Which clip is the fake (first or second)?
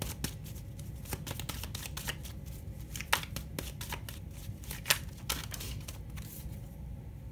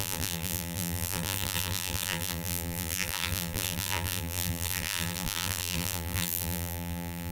second